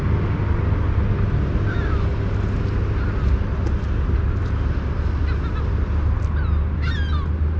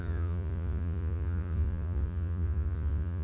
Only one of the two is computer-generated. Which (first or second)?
second